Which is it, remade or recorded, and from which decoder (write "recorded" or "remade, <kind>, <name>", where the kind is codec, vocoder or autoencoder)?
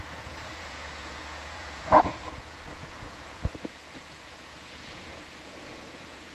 remade, vocoder, Vocos